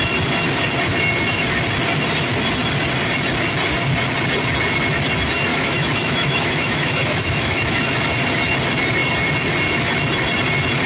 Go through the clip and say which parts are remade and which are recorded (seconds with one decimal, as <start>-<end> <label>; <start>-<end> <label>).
0.0-5.5 recorded; 5.5-7.8 remade; 7.8-10.9 recorded